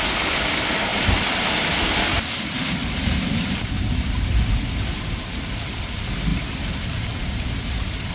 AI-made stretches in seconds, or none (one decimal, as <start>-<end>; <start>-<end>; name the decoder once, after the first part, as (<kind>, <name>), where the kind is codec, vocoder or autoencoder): 0.0-0.9 (vocoder, BigVGAN v2); 5.8-8.1